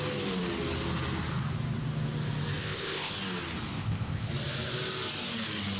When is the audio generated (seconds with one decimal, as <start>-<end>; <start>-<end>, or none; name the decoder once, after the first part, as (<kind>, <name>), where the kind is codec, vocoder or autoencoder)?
2.6-3.1 (codec, ZipCodec); 3.7-4.3